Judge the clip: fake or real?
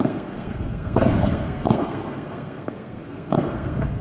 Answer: fake